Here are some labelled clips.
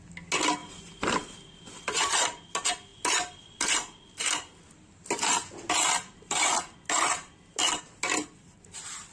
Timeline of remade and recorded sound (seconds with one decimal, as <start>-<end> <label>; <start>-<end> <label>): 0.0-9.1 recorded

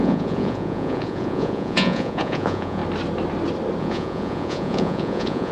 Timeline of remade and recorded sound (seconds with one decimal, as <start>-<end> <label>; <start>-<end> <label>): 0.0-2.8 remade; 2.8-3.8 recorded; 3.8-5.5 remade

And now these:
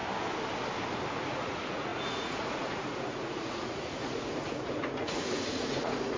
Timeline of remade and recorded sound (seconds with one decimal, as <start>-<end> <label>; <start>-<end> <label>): 0.0-1.1 recorded; 1.1-6.2 remade

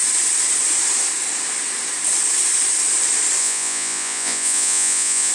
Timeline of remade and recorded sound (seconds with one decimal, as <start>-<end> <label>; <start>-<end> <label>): 0.0-3.4 recorded; 3.4-5.3 remade